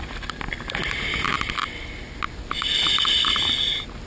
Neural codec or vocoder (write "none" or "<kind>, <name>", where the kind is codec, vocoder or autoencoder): none